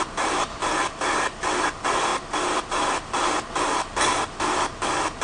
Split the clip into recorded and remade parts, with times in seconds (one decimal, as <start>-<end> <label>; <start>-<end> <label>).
0.0-0.6 remade; 0.6-1.7 recorded; 1.7-4.1 remade; 4.1-5.2 recorded